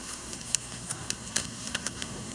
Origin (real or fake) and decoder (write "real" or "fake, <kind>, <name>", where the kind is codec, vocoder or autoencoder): fake, codec, SNAC